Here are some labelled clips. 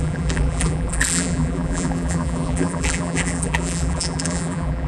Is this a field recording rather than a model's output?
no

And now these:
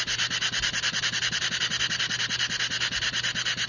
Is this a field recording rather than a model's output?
no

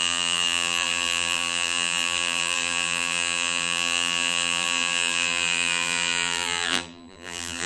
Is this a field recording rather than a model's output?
no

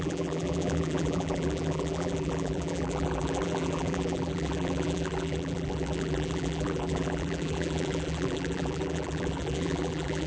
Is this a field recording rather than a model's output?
no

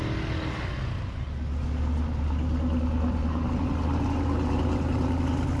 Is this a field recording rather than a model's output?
yes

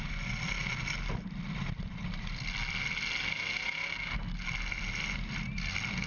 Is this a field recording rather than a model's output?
yes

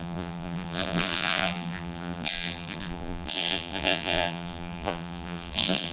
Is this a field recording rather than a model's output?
no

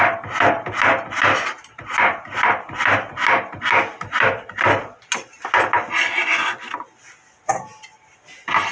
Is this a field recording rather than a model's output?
yes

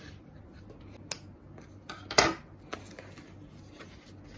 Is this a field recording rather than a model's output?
yes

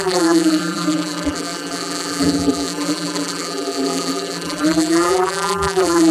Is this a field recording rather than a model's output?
no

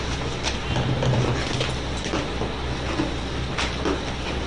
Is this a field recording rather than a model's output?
yes